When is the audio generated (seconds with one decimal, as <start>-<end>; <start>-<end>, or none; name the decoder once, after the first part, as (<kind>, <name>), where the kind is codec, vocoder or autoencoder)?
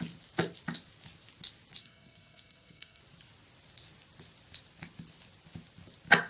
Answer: 1.8-3.0 (codec, SNAC)